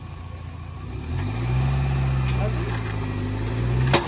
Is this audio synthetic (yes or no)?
no